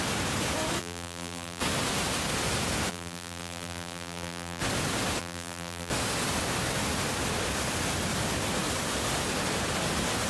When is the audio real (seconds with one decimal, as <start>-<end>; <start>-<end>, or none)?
0.0-0.8; 1.6-2.9; 4.6-5.2; 5.9-10.3